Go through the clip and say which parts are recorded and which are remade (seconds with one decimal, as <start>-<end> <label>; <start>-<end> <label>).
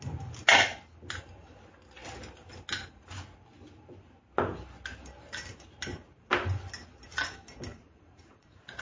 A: 0.0-7.7 recorded; 7.7-8.8 remade